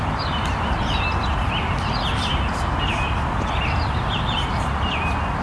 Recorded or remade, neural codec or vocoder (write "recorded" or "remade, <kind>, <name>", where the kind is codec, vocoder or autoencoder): recorded